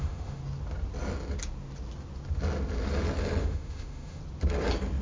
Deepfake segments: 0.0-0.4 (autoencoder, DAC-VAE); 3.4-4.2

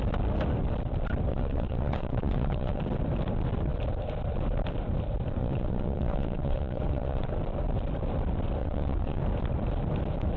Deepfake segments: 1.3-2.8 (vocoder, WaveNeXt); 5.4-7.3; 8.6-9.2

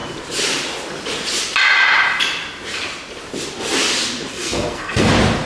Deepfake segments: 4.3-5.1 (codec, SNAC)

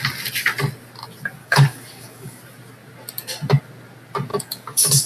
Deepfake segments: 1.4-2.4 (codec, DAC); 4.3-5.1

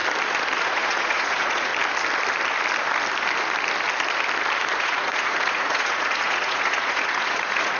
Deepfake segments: 0.6-1.7 (vocoder, Vocos); 4.8-7.8